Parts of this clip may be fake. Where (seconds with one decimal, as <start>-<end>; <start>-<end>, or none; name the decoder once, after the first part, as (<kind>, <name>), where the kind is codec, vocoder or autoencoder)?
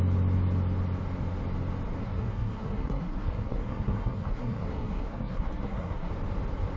2.0-6.1 (codec, SNAC)